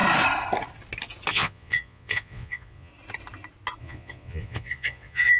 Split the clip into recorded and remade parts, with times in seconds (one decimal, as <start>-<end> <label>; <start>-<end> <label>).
0.0-1.3 recorded; 1.3-2.9 remade; 2.9-3.8 recorded; 3.8-5.4 remade